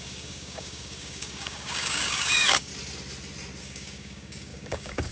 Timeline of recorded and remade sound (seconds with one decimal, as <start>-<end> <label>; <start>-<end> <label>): 0.0-2.7 remade; 2.7-3.6 recorded; 3.6-5.1 remade